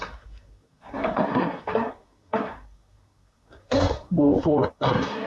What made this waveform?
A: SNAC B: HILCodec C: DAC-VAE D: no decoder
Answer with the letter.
A